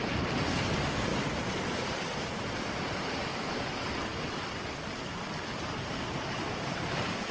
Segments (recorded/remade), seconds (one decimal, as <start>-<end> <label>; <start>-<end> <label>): 0.0-7.3 recorded

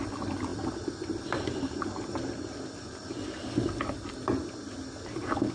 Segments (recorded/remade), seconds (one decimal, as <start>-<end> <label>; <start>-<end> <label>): 0.0-5.5 recorded

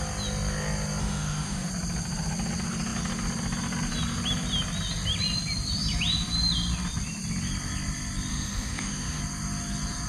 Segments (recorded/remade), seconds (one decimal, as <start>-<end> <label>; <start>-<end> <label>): 0.0-1.0 recorded; 1.0-1.7 remade; 1.7-8.3 recorded; 8.3-9.2 remade; 9.2-10.1 recorded

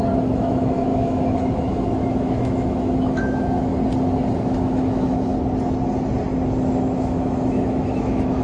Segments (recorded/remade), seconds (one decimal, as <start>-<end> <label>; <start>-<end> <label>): 0.0-3.7 remade; 3.7-4.4 recorded; 4.4-5.3 remade; 5.3-6.7 recorded; 6.7-8.4 remade

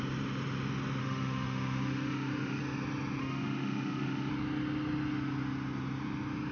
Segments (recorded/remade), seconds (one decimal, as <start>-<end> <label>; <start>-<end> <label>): 0.0-1.0 recorded; 1.0-2.6 remade; 2.6-3.2 recorded; 3.2-4.3 remade; 4.3-6.5 recorded

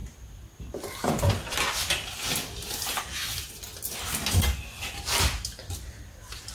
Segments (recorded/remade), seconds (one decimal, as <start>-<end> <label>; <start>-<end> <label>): 0.0-6.5 recorded

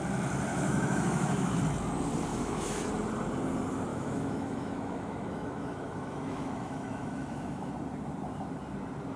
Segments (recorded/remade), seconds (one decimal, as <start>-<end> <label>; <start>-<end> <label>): 0.0-0.5 recorded; 0.5-1.6 remade; 1.6-2.3 recorded; 2.3-2.9 remade; 2.9-3.9 recorded; 3.9-7.7 remade; 7.7-9.2 recorded

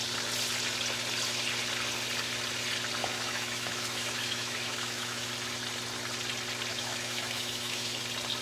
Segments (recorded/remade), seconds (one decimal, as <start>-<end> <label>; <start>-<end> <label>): 0.0-3.0 recorded; 3.0-5.3 remade; 5.3-6.7 recorded; 6.7-8.0 remade; 8.0-8.4 recorded